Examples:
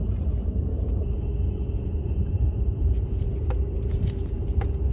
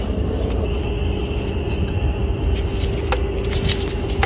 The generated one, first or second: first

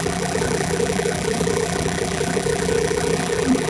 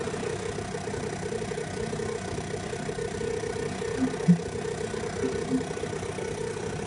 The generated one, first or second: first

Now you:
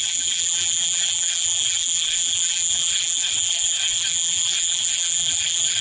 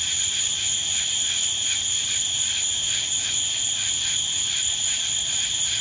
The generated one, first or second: first